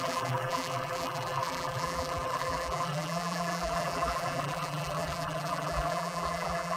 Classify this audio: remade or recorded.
remade